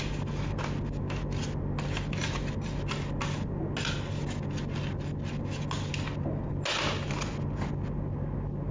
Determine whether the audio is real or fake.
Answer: real